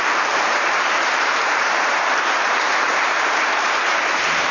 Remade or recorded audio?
remade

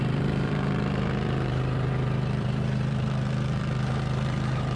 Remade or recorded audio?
remade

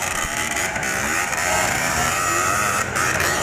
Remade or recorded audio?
remade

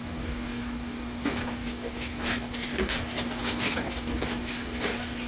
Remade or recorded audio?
remade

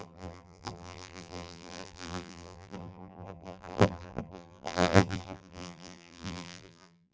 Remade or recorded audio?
remade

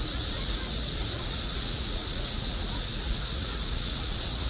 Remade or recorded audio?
remade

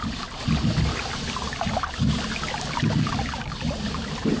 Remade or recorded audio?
recorded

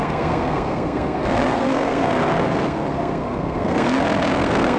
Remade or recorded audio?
remade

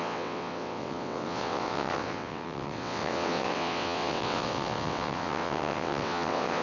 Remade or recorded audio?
remade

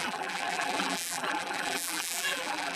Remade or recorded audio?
remade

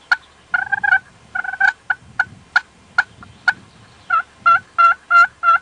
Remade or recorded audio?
recorded